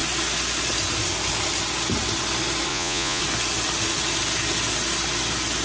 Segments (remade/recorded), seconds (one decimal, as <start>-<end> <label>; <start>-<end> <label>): 0.0-2.7 recorded; 2.7-3.2 remade; 3.2-5.6 recorded